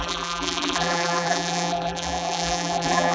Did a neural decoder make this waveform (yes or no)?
yes